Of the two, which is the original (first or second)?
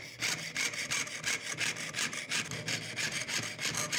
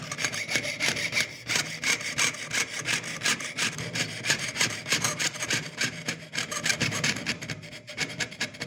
first